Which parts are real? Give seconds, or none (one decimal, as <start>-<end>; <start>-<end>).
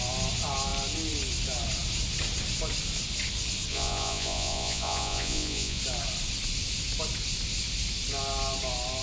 0.0-3.7; 5.8-9.0